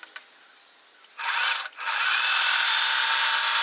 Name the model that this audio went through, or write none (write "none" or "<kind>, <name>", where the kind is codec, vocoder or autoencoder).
none